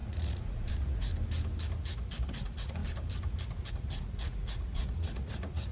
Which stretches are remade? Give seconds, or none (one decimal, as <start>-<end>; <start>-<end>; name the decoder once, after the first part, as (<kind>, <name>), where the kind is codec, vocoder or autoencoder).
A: 0.0-1.1 (vocoder, Vocos); 2.3-2.8; 3.7-5.7